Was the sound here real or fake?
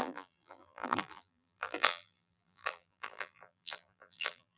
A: fake